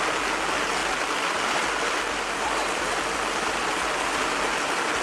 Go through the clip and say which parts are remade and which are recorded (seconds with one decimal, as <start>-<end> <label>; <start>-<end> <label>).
0.0-0.8 recorded; 0.8-1.5 remade; 1.5-5.0 recorded